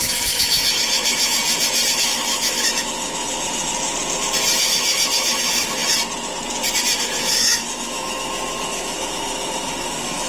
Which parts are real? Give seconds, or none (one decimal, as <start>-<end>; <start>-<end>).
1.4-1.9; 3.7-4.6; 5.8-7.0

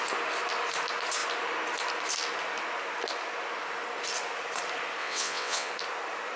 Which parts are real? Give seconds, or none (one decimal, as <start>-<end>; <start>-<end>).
0.0-5.0; 5.7-6.4

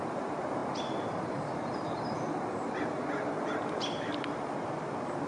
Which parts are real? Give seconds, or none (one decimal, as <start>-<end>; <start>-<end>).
0.6-1.2

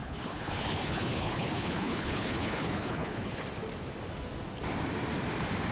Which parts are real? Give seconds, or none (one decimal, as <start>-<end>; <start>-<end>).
3.4-5.7

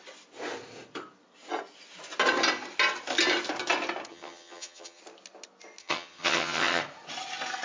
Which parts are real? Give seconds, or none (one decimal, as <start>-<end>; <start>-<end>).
0.0-4.1; 5.0-5.8; 6.8-7.6

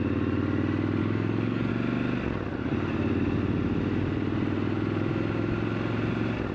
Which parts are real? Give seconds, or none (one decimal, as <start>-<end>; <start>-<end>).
0.0-1.0; 1.7-6.5

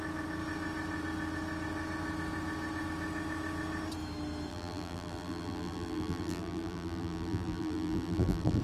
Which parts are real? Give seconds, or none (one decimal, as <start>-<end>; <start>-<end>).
0.0-4.5